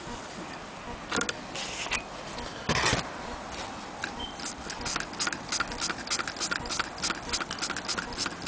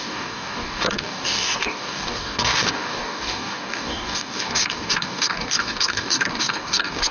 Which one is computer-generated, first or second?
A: second